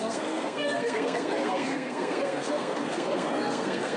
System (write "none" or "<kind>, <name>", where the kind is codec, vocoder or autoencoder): codec, SNAC